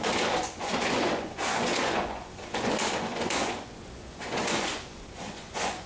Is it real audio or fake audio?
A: fake